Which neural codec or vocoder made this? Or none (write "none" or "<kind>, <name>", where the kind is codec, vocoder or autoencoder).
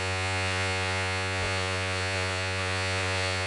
vocoder, Vocos